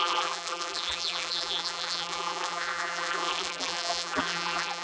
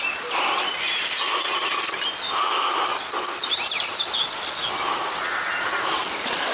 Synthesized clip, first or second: first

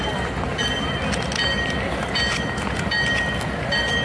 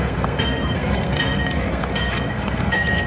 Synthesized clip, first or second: second